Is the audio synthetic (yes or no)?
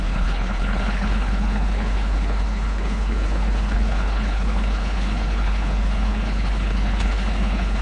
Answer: yes